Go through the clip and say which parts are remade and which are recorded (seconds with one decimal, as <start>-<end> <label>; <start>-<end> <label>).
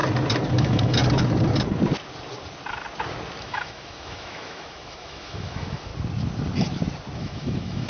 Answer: 0.0-0.6 recorded; 0.6-1.0 remade; 1.0-3.4 recorded; 3.4-5.9 remade; 5.9-7.2 recorded; 7.2-7.9 remade